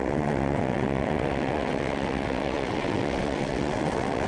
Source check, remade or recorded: remade